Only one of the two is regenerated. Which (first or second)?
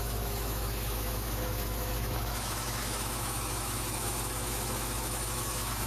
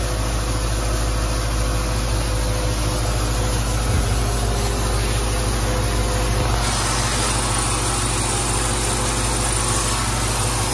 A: first